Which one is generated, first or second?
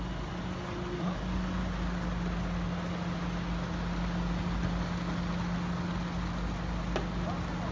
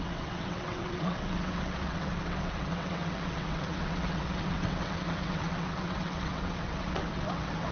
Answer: second